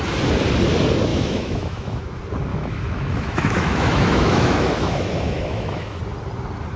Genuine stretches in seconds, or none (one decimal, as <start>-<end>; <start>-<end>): 0.0-1.1; 2.0-2.5; 6.0-6.8